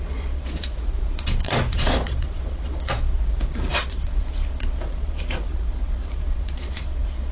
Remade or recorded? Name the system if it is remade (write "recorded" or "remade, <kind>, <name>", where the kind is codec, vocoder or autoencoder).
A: remade, vocoder, Vocos